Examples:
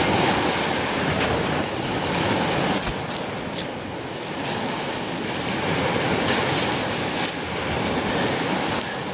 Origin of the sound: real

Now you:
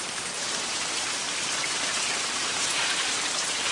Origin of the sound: fake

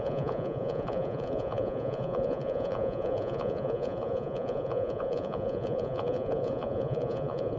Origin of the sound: fake